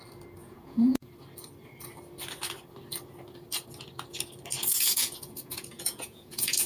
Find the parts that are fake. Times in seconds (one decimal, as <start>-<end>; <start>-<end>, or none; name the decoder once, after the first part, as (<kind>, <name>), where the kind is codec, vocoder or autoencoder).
0.4-1.1 (vocoder, Vocos); 4.6-6.7